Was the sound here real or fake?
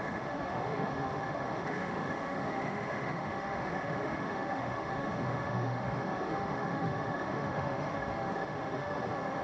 fake